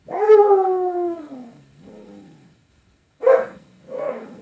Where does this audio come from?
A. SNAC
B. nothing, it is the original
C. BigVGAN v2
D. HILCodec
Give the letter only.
A